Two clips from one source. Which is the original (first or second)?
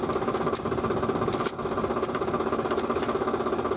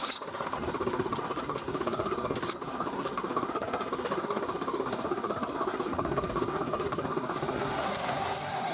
first